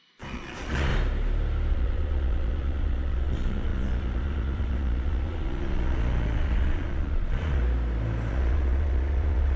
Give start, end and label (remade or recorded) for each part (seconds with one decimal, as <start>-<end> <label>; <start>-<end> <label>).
0.0-0.9 remade; 0.9-1.7 recorded; 1.7-7.6 remade; 7.6-8.3 recorded; 8.3-9.6 remade